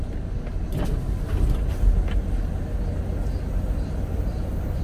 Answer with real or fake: real